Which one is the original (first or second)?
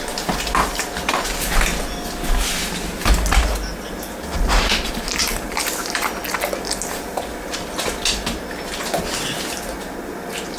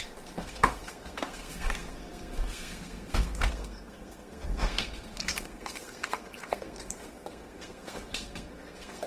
first